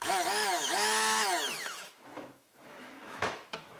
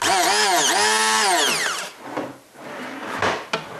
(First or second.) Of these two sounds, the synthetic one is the first